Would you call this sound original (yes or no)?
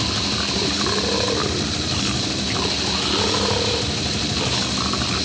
yes